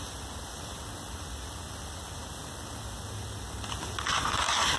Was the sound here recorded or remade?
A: recorded